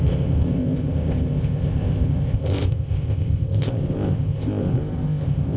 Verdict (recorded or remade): remade